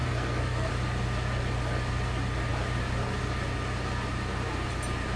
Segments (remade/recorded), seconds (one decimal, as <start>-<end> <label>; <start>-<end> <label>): 0.0-0.7 remade; 0.7-5.2 recorded